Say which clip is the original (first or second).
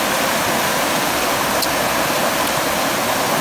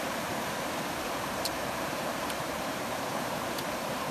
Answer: first